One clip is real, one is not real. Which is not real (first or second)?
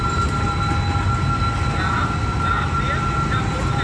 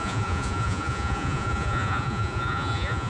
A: second